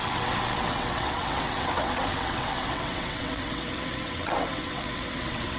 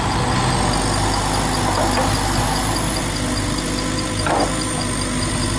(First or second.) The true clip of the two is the second